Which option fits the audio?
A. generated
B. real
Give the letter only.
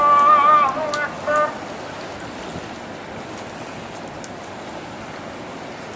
B